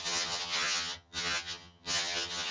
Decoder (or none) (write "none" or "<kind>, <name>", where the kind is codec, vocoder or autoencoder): vocoder, HiFi-GAN